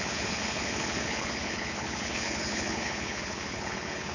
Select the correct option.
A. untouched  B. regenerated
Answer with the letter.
B